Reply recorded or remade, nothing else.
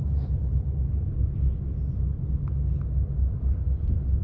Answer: recorded